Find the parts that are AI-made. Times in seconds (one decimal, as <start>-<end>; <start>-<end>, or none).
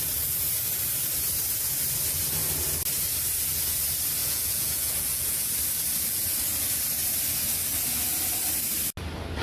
4.2-5.5